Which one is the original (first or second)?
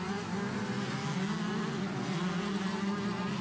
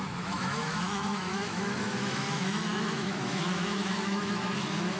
first